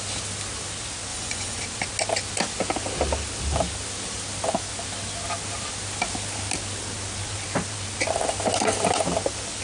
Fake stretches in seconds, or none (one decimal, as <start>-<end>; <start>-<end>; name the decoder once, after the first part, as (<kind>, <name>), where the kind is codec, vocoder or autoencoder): 1.1-1.6 (vocoder, Vocos)